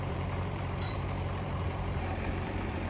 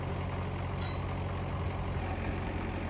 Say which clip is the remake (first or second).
first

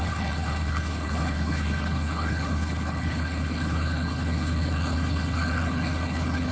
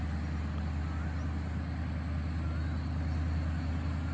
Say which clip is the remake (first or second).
first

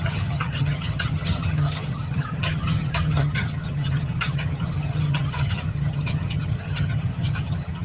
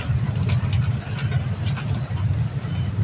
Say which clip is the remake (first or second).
first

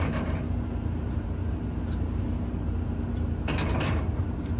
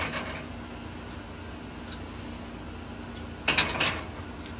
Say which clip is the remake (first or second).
first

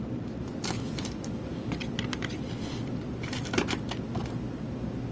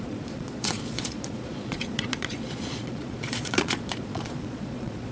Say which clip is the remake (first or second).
second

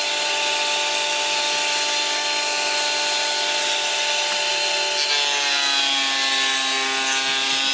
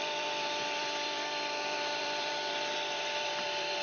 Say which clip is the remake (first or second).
second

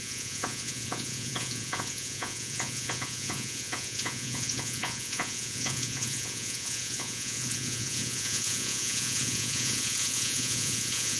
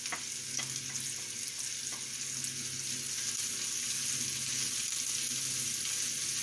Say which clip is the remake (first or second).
first